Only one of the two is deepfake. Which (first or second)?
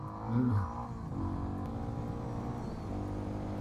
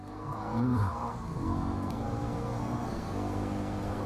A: second